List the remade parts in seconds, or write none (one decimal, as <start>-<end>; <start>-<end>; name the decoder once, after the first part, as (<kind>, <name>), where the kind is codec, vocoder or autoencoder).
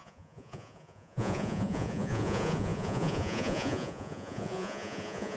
0.0-5.4 (vocoder, Vocos)